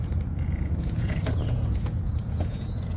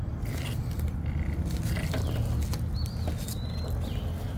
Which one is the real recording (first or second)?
second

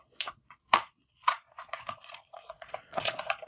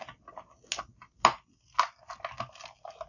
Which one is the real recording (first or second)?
second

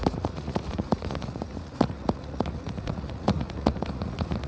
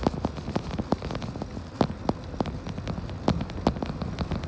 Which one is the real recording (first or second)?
second